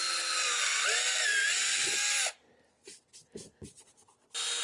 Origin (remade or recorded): recorded